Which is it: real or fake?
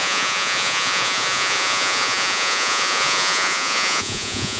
fake